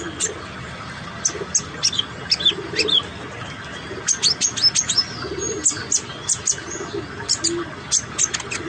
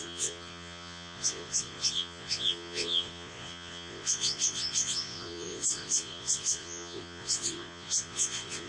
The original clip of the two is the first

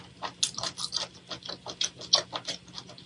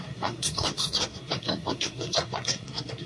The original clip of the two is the first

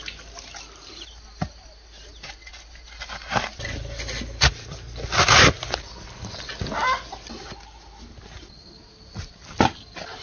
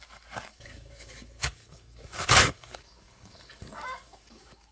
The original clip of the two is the first